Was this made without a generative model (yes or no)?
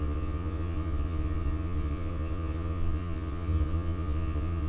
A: no